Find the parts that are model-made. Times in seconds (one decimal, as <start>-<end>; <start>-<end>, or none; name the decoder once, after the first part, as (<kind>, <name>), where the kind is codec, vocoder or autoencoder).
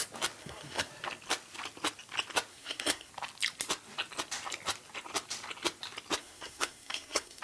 0.4-0.9 (codec, SNAC); 2.5-3.1; 6.2-7.4